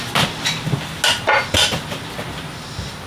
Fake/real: real